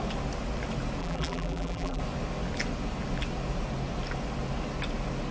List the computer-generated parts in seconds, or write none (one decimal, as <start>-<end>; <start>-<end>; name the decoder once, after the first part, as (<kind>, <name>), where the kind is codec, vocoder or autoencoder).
1.0-2.0 (vocoder, BigVGAN v2)